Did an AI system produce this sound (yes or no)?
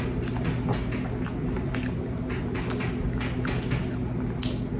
no